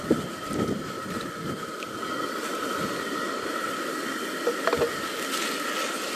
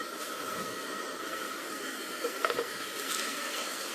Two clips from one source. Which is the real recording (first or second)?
first